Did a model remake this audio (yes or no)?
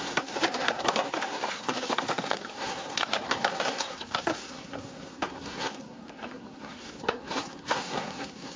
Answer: yes